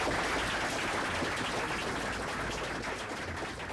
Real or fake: real